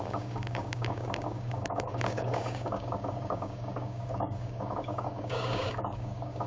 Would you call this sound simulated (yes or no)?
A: yes